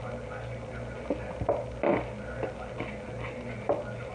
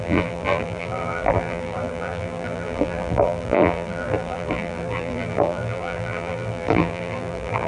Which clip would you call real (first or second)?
first